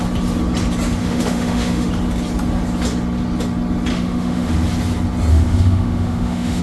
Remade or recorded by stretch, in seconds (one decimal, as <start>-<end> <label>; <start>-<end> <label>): 0.0-1.0 recorded; 1.0-1.9 remade; 1.9-3.9 recorded; 3.9-4.5 remade; 4.5-5.3 recorded; 5.3-6.6 remade